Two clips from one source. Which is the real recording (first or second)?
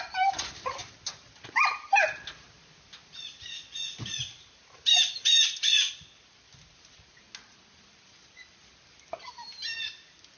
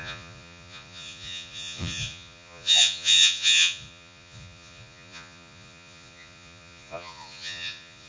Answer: first